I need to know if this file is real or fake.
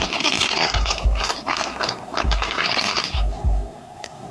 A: fake